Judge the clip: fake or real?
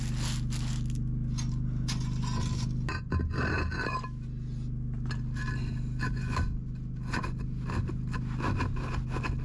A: real